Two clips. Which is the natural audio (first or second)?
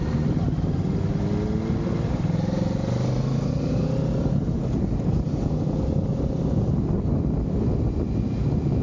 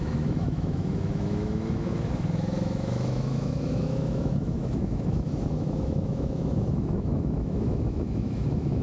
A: first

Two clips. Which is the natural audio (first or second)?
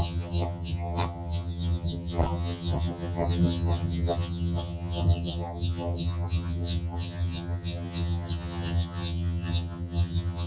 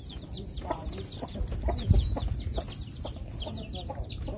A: second